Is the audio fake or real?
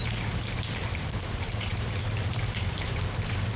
fake